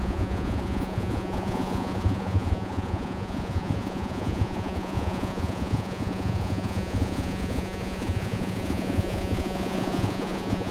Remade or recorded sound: remade